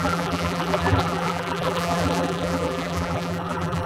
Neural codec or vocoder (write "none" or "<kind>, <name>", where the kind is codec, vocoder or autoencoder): vocoder, BigVGAN v2